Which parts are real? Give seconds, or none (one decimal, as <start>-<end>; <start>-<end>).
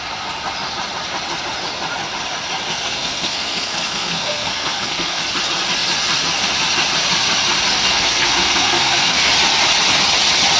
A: 0.0-2.7; 5.2-7.8; 9.3-10.6